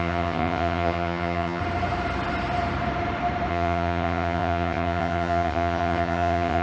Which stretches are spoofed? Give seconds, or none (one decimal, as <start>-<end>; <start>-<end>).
0.0-1.6; 3.5-6.6